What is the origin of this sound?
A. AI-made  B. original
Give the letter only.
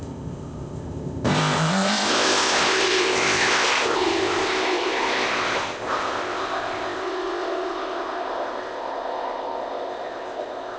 A